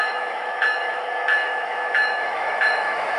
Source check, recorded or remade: remade